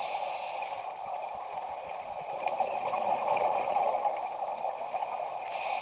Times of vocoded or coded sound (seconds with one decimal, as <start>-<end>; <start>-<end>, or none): 1.5-3.8